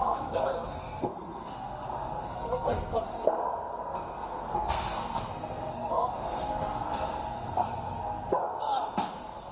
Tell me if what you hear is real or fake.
fake